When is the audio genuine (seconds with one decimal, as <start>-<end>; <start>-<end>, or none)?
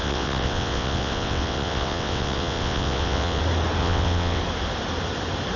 3.4-3.8; 4.4-5.6